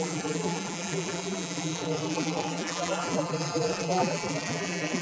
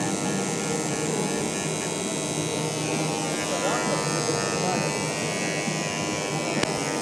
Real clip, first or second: second